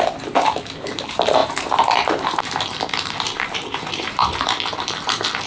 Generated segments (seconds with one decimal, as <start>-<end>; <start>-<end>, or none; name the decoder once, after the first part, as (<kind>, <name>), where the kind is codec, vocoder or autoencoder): 0.0-5.5 (vocoder, BigVGAN v2)